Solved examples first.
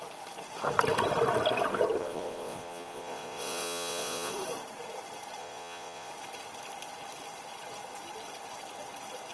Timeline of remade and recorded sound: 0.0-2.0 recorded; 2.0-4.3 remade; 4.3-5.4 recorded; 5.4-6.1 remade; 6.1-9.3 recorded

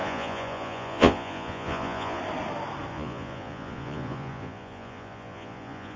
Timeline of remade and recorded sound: 0.0-2.2 remade; 2.2-2.9 recorded; 2.9-6.0 remade

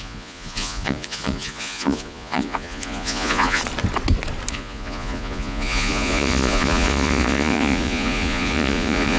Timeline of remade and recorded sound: 0.0-3.6 remade; 3.6-4.5 recorded; 4.5-9.2 remade